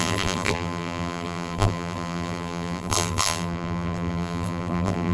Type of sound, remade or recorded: remade